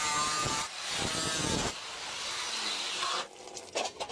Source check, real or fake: real